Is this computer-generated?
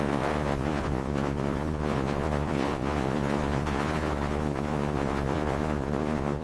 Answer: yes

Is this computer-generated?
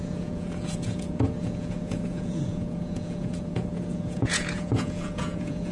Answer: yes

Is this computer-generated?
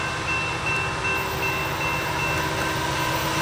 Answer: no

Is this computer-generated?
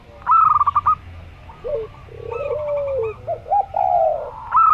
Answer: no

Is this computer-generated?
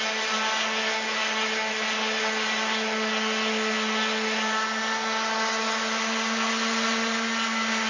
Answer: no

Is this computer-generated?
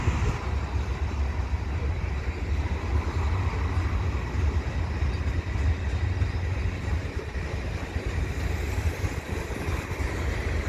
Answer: no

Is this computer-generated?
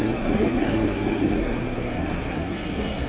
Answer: yes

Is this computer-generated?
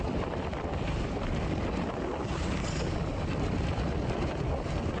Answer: no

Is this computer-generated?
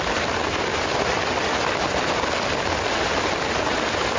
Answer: no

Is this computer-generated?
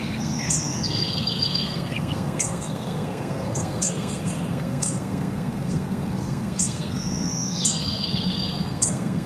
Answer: yes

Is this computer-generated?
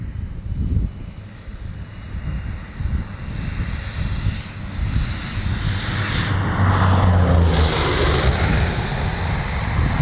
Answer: no